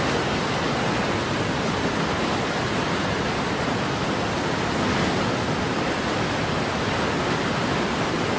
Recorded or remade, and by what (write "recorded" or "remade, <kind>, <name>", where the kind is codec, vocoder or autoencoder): recorded